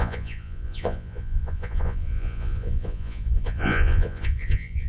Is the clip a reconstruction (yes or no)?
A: yes